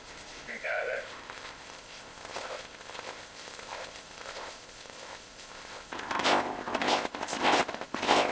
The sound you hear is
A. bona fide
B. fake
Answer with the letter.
B